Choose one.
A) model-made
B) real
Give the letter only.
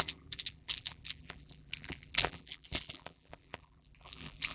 A